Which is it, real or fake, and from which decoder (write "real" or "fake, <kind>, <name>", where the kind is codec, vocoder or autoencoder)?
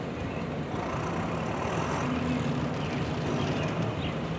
real